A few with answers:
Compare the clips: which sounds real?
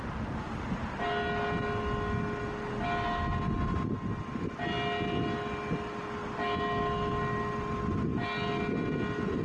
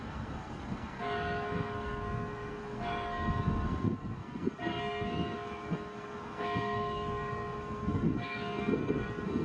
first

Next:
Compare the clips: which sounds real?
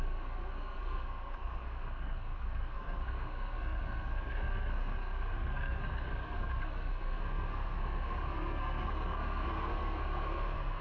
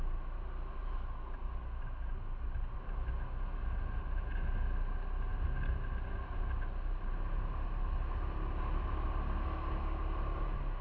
second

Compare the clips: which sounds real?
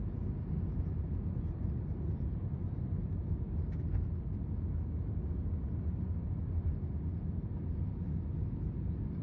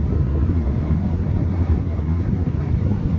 first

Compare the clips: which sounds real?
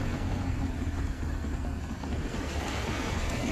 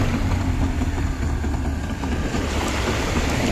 second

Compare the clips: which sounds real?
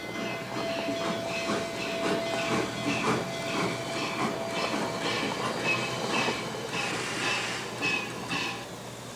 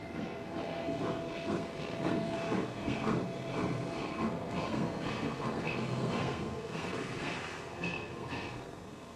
first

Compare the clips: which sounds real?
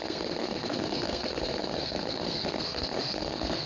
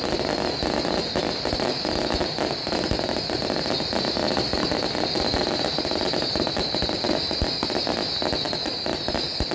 second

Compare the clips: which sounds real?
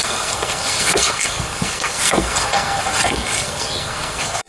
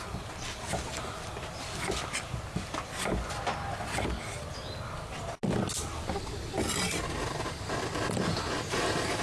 second